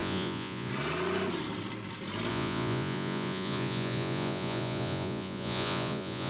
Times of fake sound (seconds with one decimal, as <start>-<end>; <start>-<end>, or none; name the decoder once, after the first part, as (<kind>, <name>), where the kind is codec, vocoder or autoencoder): 0.0-0.7 (vocoder, Vocos); 2.3-6.3